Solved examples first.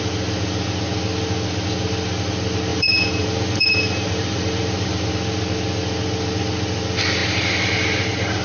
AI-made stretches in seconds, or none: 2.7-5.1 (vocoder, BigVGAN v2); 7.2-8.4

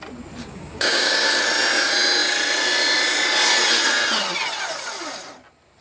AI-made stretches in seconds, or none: 0.4-1.3 (codec, DAC)

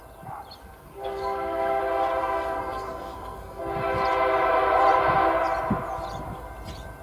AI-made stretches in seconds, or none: 0.6-1.8 (codec, SNAC); 2.2-3.6

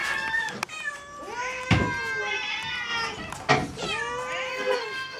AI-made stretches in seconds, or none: 4.5-5.2 (codec, SNAC)

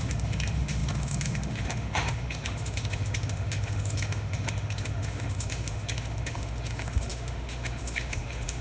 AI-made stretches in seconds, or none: 0.0-8.6 (autoencoder, DAC-VAE)

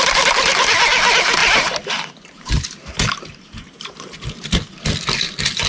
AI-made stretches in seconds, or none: 1.4-4.8 (vocoder, BigVGAN v2)

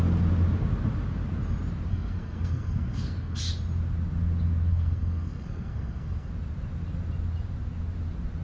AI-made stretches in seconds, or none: 1.9-3.4 (codec, SNAC); 4.7-6.3

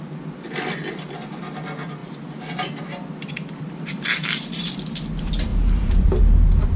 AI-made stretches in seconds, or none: 2.0-5.0 (vocoder, BigVGAN v2); 5.5-6.2